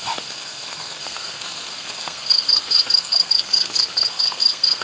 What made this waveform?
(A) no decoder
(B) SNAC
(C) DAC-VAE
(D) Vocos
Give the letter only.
B